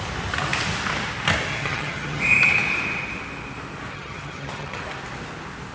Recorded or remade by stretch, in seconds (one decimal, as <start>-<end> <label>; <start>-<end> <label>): 0.0-1.5 recorded; 1.5-2.2 remade; 2.2-3.9 recorded; 3.9-4.8 remade; 4.8-5.7 recorded